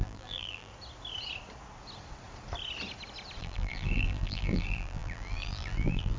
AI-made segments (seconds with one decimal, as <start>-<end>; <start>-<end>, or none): 0.0-0.7; 3.4-6.2